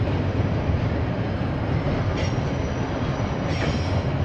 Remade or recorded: recorded